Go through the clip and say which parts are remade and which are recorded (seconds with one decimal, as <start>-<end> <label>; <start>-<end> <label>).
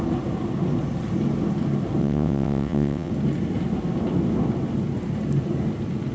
0.0-2.0 recorded; 2.0-3.1 remade; 3.1-6.1 recorded